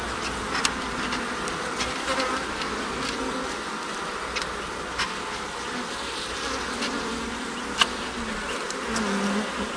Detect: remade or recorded recorded